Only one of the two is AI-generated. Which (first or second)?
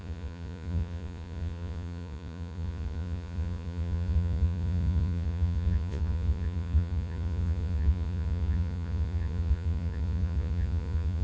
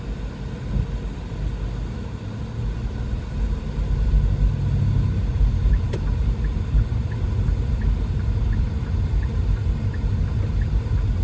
first